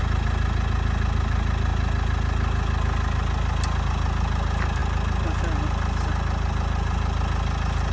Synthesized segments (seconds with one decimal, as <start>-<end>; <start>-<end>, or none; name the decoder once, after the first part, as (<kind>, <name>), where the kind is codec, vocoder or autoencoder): none